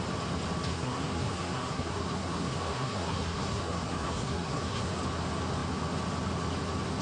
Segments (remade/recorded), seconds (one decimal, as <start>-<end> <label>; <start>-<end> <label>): 0.0-0.7 recorded; 0.7-4.9 remade; 4.9-7.0 recorded